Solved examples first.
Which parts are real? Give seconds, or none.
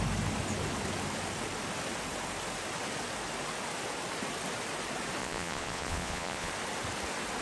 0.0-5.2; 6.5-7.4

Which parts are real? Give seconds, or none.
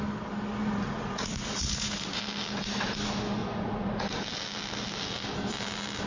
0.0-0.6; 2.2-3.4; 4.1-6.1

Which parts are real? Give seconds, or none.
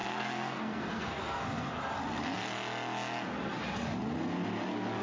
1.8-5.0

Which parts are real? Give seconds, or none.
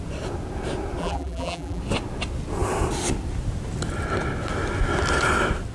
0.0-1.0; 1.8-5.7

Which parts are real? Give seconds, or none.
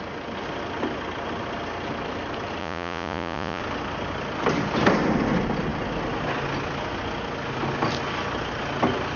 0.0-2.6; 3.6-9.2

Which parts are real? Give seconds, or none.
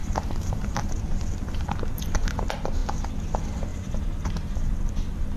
0.8-3.7; 4.8-5.4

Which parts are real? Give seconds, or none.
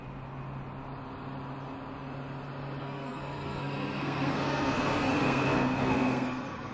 0.0-2.8